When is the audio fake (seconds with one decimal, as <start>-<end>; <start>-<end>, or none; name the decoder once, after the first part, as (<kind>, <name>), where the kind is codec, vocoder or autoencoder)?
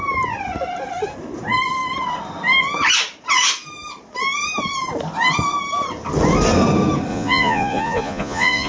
7.1-8.7 (vocoder, Vocos)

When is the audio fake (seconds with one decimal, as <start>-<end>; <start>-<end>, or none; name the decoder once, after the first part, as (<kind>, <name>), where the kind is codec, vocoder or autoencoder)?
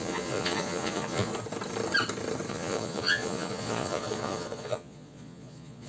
0.0-1.3 (vocoder, Vocos); 2.5-5.9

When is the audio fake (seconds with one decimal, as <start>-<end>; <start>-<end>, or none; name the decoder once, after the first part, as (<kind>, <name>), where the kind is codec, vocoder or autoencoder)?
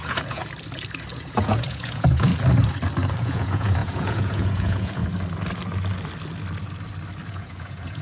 0.0-0.4 (vocoder, Vocos); 1.1-2.3; 3.1-5.0; 7.3-8.0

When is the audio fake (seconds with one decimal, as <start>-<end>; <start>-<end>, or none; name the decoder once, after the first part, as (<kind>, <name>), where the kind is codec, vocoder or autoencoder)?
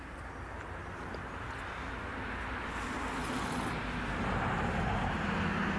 none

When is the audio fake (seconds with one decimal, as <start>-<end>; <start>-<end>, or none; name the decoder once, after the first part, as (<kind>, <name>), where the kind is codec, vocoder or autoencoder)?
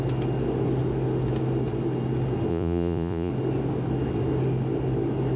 2.5-3.3 (vocoder, Vocos)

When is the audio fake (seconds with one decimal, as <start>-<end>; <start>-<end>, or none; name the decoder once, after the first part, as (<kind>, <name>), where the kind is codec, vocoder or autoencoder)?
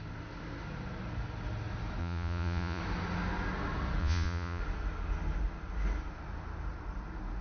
2.0-2.8 (vocoder, Vocos); 4.0-4.6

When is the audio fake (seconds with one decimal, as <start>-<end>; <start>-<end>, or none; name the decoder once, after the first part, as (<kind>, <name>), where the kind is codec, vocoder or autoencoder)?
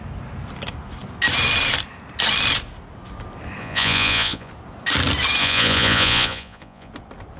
3.6-4.5 (vocoder, Vocos); 5.4-6.9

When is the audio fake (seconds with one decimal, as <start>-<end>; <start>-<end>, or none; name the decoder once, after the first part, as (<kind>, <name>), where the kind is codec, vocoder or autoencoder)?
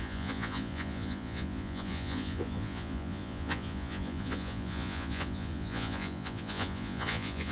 0.0-7.5 (vocoder, Vocos)